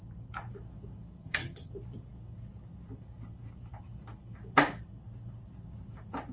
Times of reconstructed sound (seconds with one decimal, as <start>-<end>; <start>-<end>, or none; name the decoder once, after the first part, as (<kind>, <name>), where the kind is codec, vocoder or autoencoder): 1.2-1.7 (vocoder, HiFi-GAN)